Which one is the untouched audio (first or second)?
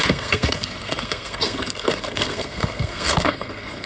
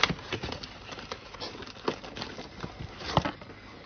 second